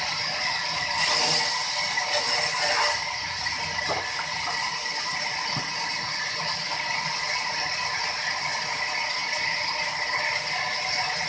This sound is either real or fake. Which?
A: real